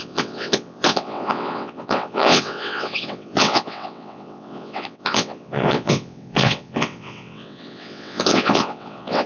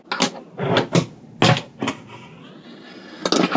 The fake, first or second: first